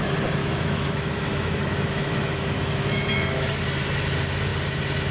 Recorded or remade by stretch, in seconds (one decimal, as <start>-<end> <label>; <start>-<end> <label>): 0.0-0.4 recorded; 0.4-3.5 remade; 3.5-5.1 recorded